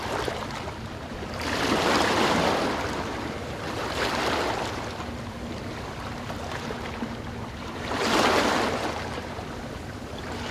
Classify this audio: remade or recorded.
recorded